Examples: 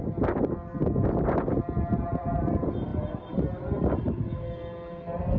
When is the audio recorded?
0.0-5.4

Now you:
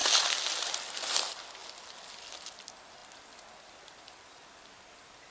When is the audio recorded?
0.0-5.3

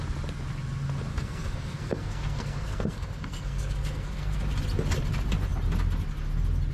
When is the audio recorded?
0.0-1.1; 4.4-6.7

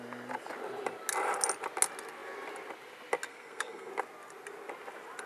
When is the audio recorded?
0.0-3.3; 3.9-5.3